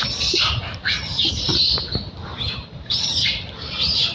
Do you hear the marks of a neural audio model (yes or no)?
no